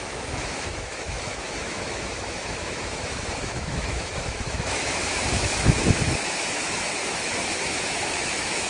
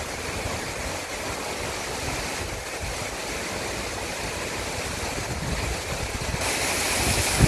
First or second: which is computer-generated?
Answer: first